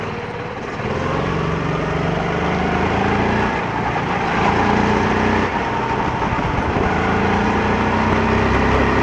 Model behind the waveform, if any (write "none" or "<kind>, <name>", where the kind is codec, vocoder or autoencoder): none